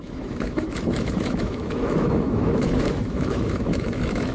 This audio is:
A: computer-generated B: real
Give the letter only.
A